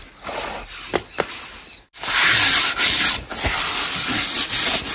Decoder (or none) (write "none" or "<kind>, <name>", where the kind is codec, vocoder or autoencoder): none